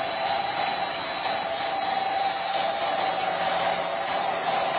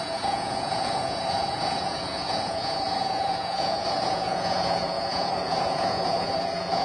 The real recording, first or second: first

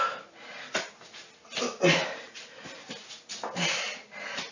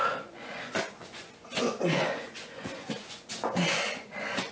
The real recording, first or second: first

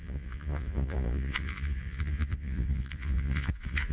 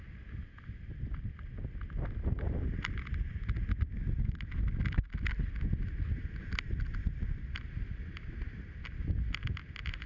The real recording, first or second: second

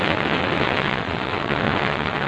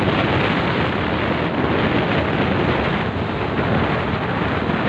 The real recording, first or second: second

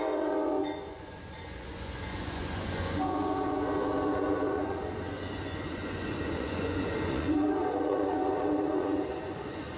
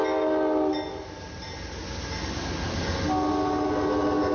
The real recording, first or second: second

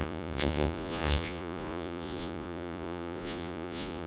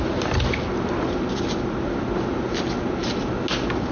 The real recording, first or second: second